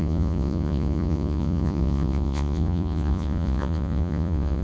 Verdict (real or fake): fake